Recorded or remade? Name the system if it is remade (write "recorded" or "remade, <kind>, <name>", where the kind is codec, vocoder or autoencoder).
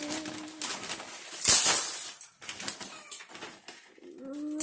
recorded